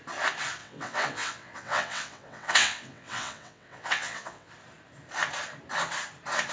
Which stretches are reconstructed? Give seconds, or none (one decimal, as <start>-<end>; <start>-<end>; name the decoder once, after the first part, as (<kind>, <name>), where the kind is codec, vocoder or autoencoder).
0.6-4.5 (vocoder, WaveNeXt)